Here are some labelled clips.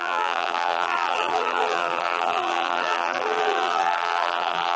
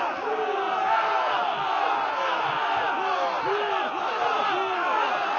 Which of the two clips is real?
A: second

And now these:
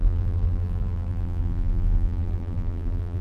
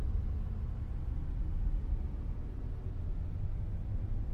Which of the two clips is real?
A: second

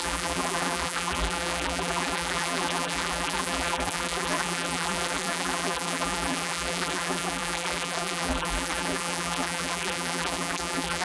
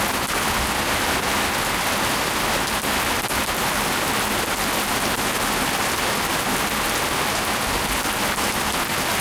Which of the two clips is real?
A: second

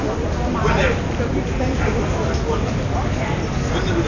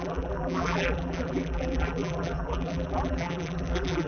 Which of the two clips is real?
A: first